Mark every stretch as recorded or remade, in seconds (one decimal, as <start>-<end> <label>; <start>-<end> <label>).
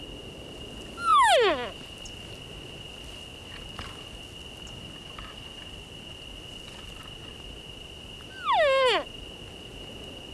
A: 0.0-10.3 recorded